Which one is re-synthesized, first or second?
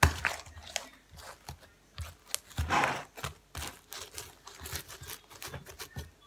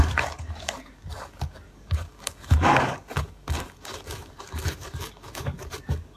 second